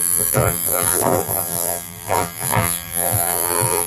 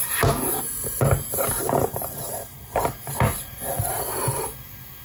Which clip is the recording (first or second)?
second